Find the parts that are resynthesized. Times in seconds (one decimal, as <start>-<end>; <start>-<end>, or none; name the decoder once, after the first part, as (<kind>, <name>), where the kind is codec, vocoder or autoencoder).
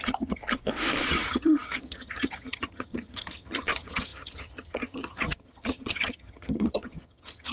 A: 0.0-0.4 (vocoder, HiFi-GAN); 1.1-7.5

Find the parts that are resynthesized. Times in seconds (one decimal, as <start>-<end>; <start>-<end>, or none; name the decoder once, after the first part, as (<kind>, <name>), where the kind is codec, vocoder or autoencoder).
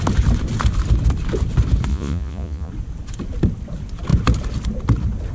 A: 1.9-2.7 (vocoder, Vocos)